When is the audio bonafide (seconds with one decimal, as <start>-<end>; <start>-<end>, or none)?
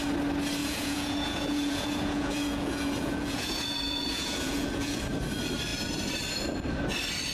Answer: 0.0-0.6; 5.0-7.3